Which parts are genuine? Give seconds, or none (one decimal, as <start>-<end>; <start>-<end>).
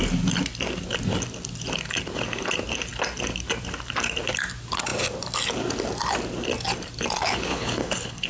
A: 0.0-7.5